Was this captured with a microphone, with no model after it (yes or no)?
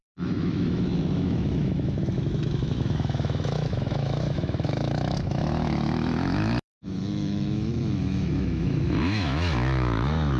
no